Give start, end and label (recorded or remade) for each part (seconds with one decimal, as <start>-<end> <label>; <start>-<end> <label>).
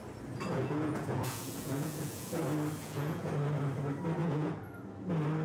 0.0-0.5 recorded; 0.5-2.4 remade; 2.4-2.8 recorded; 2.8-3.3 remade; 3.3-4.2 recorded; 4.2-4.7 remade; 4.7-5.4 recorded